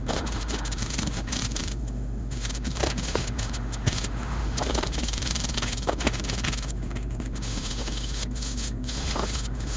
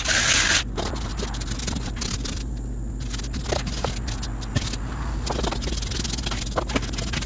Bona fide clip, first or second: second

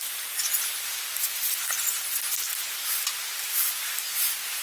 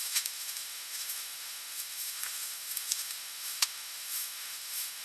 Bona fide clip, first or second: first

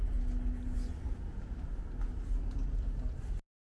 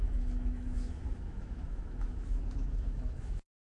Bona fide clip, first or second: first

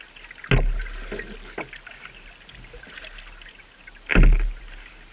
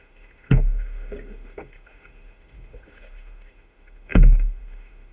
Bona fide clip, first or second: first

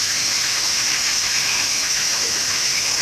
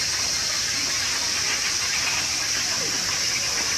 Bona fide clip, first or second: second